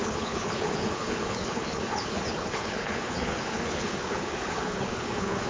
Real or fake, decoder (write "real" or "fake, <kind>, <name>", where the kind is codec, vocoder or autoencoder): fake, codec, HILCodec